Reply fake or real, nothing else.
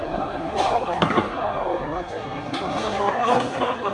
fake